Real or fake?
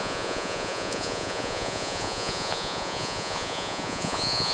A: fake